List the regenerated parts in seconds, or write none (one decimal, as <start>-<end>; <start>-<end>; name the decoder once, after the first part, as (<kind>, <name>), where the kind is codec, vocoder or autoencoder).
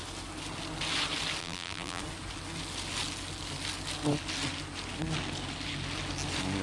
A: 1.4-2.0 (vocoder, BigVGAN v2)